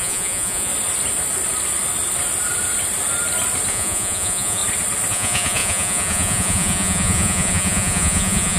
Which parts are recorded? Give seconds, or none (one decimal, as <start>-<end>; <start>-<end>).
0.7-3.7; 4.6-5.1